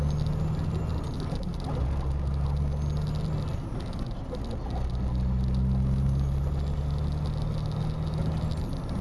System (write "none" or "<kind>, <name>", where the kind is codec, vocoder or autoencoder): none